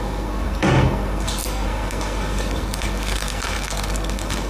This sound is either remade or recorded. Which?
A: remade